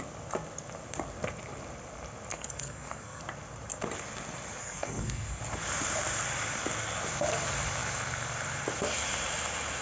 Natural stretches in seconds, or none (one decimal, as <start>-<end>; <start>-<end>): 0.0-2.3; 3.2-4.6; 5.4-9.8